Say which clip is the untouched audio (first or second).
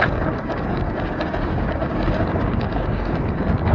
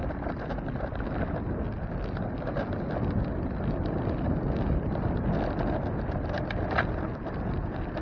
second